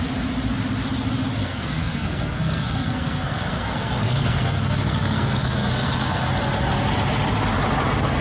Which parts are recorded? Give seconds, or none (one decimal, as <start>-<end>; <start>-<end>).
0.0-1.4; 6.3-8.2